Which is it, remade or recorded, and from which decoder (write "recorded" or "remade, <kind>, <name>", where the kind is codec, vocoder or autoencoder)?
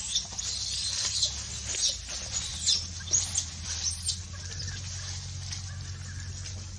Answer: recorded